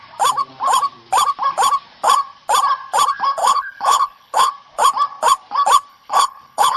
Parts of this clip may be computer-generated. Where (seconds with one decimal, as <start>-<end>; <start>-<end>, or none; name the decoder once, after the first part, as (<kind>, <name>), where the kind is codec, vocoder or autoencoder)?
3.4-4.5 (codec, HILCodec); 5.9-6.8